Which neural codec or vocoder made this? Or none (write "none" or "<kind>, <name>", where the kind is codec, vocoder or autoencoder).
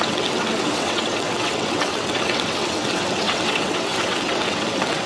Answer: vocoder, WaveNeXt